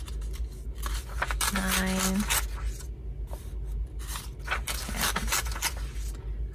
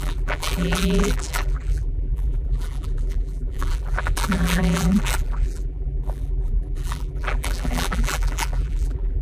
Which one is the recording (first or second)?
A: first